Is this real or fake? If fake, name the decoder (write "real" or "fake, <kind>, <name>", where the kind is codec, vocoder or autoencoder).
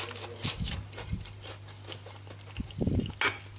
real